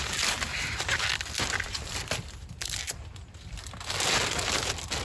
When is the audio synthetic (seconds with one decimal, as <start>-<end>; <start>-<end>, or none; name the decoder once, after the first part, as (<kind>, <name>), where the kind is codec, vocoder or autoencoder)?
none